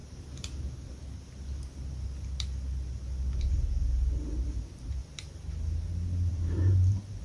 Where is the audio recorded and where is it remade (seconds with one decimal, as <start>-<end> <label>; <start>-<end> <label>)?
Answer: 0.0-4.3 recorded; 4.3-5.0 remade; 5.0-6.3 recorded; 6.3-7.2 remade